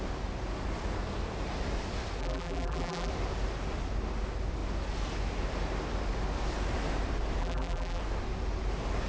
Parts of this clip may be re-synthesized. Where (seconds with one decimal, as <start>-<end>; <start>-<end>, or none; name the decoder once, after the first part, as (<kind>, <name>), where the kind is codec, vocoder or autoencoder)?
2.2-3.1 (vocoder, BigVGAN v2); 7.4-8.0